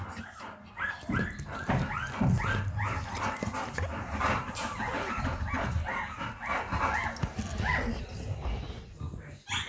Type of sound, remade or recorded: recorded